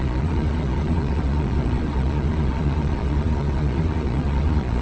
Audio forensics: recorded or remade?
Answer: remade